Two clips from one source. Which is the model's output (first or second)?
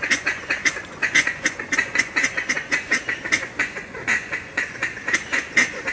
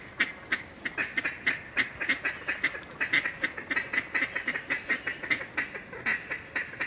first